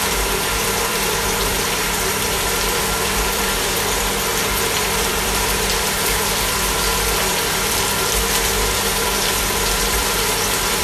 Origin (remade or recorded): remade